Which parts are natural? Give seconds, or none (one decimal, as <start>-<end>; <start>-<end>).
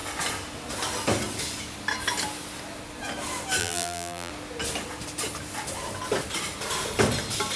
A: 0.0-3.6; 4.3-7.6